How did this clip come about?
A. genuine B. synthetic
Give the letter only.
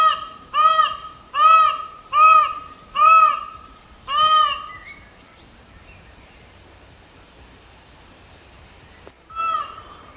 B